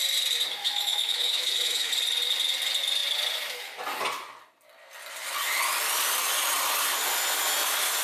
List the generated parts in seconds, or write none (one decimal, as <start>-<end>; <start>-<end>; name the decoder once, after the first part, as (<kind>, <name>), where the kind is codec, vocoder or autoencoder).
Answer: 0.6-1.9 (autoencoder, DAC-VAE)